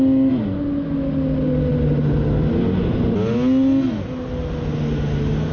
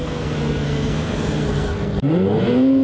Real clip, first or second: first